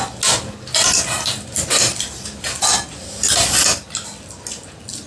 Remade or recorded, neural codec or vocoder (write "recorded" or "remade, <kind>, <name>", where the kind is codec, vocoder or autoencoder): recorded